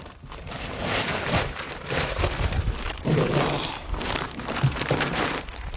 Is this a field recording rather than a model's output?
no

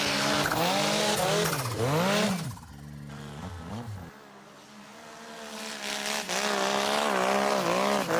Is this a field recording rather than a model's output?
yes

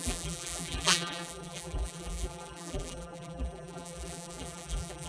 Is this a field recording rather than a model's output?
no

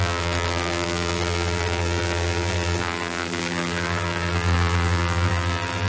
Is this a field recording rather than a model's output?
no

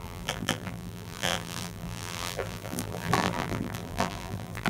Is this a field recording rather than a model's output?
no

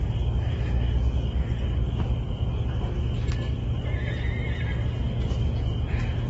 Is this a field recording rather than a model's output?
yes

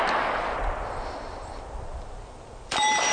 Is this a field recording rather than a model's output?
no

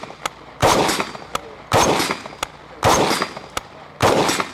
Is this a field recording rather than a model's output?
yes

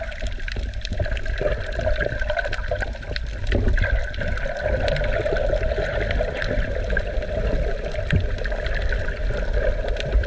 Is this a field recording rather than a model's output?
yes